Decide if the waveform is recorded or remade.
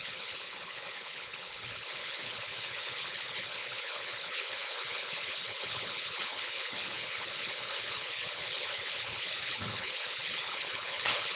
remade